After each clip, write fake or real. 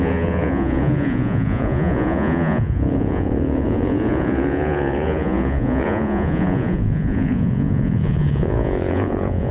fake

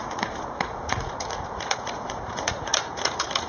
fake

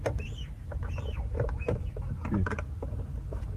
real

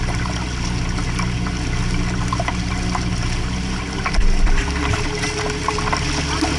real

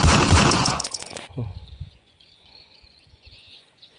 fake